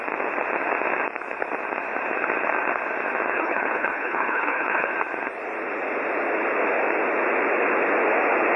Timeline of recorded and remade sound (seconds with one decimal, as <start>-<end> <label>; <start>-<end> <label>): 0.0-3.3 recorded; 3.3-4.9 remade; 4.9-8.6 recorded